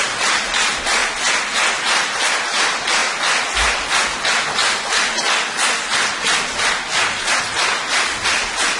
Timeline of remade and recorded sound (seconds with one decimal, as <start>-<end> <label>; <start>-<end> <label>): 0.0-1.0 remade; 1.0-1.8 recorded; 1.8-3.0 remade; 3.0-7.4 recorded; 7.4-8.8 remade